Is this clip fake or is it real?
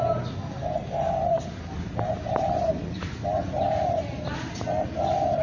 real